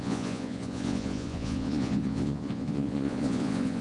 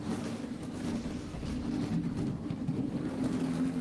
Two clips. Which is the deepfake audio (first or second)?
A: first